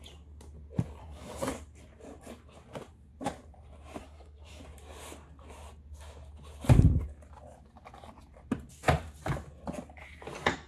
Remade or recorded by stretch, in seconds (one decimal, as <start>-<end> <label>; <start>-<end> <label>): 0.0-1.0 recorded; 1.0-1.5 remade; 1.5-4.0 recorded; 4.0-4.6 remade; 4.6-10.7 recorded